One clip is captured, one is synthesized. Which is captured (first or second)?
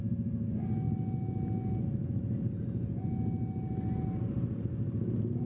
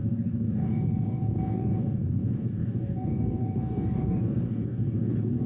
first